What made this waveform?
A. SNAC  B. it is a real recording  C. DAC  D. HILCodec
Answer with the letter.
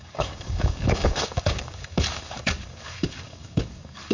C